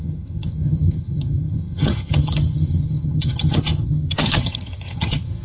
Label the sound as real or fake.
fake